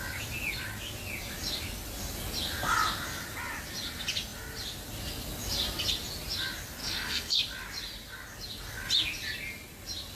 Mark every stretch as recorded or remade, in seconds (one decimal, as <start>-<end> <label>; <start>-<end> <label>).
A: 0.0-6.8 recorded; 6.8-7.4 remade; 7.4-10.2 recorded